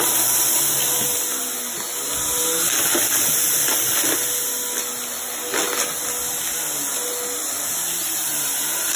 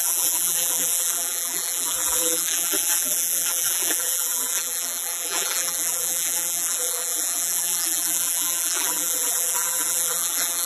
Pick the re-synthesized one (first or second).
second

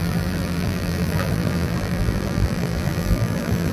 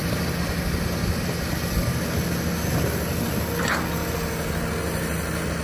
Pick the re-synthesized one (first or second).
first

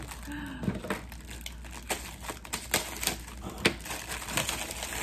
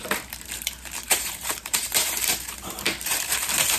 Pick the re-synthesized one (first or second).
second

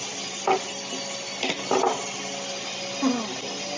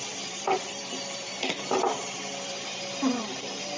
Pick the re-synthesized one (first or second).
second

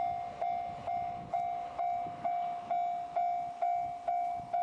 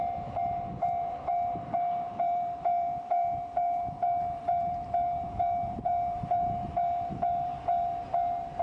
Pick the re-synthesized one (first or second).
second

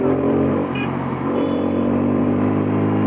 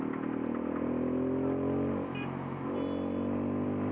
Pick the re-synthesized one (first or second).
first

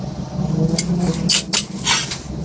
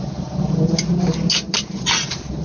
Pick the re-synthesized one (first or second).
second